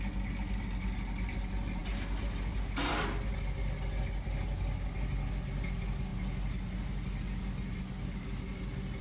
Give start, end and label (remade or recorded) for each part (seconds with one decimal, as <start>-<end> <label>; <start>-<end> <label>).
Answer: 0.0-9.0 recorded